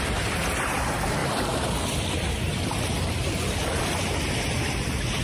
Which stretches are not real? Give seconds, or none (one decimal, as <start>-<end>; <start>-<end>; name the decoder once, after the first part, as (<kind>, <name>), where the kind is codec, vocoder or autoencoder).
1.2-4.3 (vocoder, BigVGAN v2)